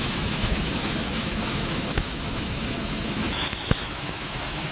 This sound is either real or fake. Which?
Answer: fake